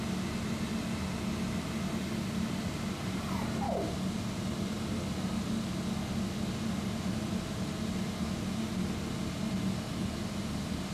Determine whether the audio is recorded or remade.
recorded